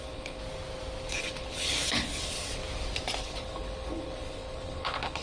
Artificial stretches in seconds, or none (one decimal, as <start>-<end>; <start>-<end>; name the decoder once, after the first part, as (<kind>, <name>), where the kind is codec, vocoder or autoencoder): 0.0-0.4 (codec, HILCodec); 1.1-2.6; 3.2-5.2